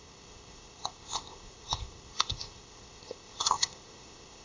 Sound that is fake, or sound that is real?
fake